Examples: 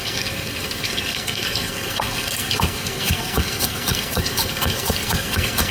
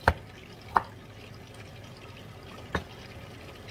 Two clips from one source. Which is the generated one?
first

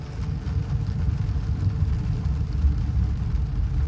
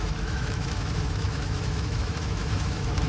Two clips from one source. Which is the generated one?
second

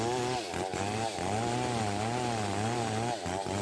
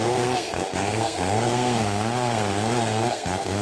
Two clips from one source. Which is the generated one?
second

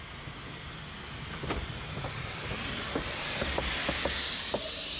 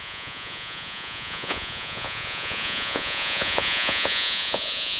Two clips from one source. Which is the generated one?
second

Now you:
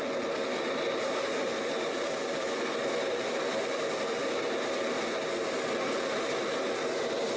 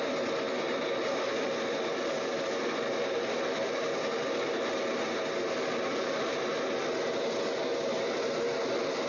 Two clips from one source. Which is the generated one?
first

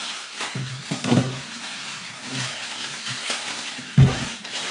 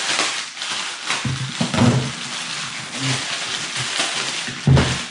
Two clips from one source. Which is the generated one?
first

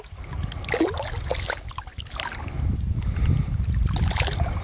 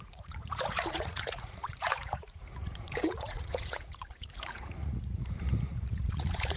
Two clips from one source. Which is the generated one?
second